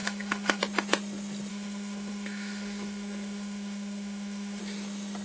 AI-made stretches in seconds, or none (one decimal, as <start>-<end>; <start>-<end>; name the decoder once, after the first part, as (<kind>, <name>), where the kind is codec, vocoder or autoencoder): 0.0-0.6 (autoencoder, DAC-VAE); 1.5-4.6